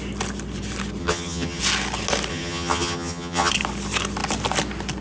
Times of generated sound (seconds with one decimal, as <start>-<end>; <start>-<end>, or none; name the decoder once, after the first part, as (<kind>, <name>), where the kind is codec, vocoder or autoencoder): 1.0-1.6 (vocoder, HiFi-GAN); 2.3-3.5